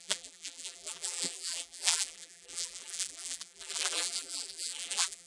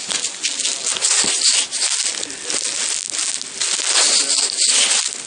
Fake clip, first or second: first